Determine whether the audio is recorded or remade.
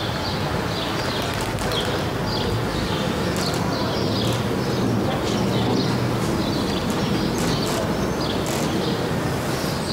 recorded